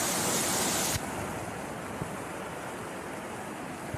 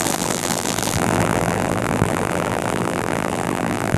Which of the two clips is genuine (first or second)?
first